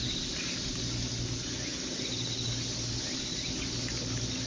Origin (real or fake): real